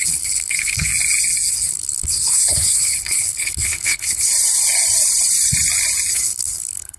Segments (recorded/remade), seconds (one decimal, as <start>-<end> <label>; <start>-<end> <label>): 0.0-0.9 remade; 0.9-1.5 recorded; 1.5-4.3 remade; 4.3-6.1 recorded; 6.1-7.0 remade